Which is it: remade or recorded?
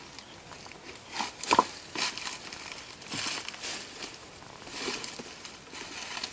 recorded